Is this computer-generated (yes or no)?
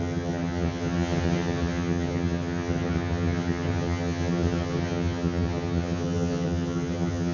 yes